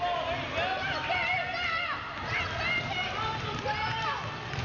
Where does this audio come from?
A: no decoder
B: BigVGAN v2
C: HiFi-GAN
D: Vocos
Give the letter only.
A